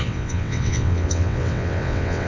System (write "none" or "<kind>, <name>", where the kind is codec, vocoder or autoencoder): vocoder, WaveNeXt